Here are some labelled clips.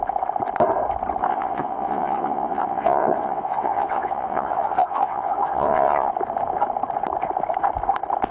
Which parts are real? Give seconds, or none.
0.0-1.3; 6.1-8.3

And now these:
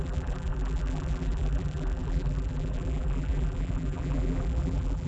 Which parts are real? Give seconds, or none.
none

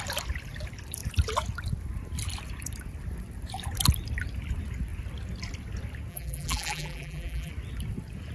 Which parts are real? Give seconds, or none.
0.0-6.1; 7.5-8.3